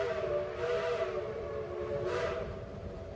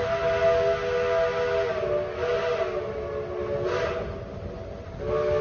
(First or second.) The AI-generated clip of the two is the first